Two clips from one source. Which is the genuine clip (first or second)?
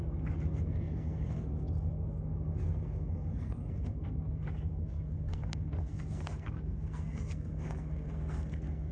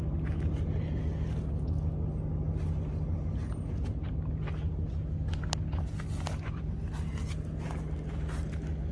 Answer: second